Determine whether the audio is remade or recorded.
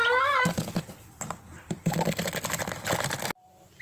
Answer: recorded